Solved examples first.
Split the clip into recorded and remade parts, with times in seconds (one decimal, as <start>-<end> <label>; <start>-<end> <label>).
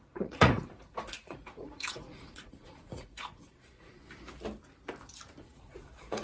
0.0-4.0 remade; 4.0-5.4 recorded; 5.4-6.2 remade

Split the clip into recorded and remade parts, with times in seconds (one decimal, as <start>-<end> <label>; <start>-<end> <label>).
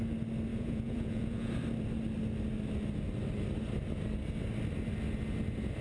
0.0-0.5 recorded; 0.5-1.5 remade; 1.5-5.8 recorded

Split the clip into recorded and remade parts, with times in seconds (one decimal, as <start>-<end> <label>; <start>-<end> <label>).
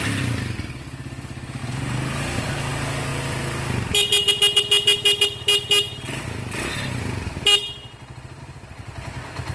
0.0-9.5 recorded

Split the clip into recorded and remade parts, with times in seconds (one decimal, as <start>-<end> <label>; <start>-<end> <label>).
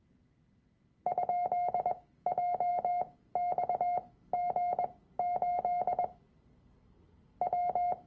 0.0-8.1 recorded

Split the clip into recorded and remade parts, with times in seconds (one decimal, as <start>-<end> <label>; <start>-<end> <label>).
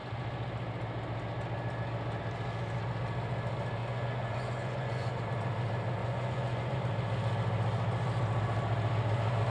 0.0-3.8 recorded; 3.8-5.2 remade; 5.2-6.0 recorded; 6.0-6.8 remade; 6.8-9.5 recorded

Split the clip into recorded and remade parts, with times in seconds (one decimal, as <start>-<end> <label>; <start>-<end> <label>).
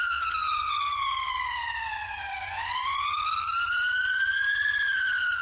0.0-0.4 recorded; 0.4-3.1 remade; 3.1-4.0 recorded; 4.0-4.7 remade; 4.7-5.4 recorded